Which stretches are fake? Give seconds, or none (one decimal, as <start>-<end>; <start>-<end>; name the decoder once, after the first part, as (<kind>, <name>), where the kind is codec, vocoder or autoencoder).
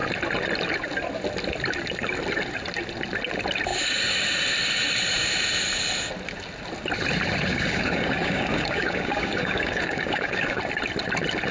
7.5-10.6 (codec, DAC)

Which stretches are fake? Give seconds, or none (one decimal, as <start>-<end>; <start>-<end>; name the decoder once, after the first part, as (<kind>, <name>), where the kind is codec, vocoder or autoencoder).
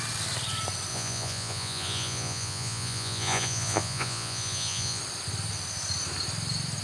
0.9-5.0 (vocoder, Vocos)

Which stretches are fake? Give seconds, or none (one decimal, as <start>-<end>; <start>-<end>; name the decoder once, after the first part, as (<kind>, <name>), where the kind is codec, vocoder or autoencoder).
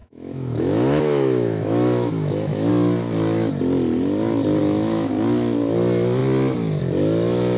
0.0-2.7 (autoencoder, DAC-VAE); 4.6-5.1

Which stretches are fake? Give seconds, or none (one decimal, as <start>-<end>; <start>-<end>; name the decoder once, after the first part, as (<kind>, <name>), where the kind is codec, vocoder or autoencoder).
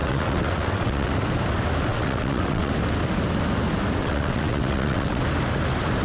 0.0-1.1 (vocoder, WaveNeXt); 1.9-2.7; 4.0-5.2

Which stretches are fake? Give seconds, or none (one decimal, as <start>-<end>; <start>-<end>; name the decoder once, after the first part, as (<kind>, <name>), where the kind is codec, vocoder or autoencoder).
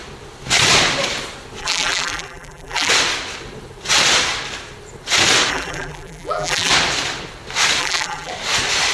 1.6-2.9 (vocoder, BigVGAN v2); 5.5-6.7; 7.8-8.3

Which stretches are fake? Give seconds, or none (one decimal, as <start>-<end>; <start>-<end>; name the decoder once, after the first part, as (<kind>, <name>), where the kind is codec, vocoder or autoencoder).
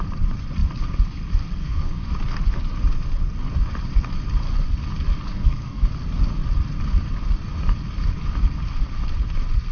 1.6-2.1 (codec, SNAC); 5.3-5.9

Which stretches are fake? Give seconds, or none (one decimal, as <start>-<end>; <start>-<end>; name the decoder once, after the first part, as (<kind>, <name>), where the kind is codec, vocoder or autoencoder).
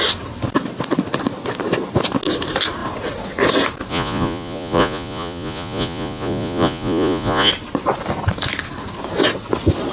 3.9-7.5 (vocoder, Vocos)